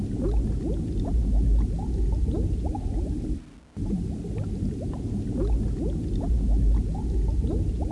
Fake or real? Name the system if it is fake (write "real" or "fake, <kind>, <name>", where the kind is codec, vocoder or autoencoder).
real